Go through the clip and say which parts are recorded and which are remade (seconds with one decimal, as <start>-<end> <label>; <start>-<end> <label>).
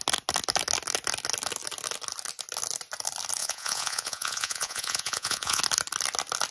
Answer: 0.0-3.4 recorded; 3.4-5.6 remade; 5.6-6.5 recorded